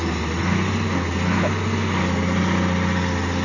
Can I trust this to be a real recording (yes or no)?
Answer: yes